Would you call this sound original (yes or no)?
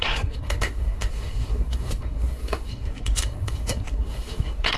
no